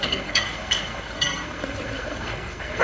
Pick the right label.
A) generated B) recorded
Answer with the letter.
A